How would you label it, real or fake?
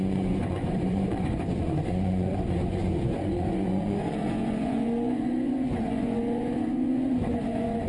fake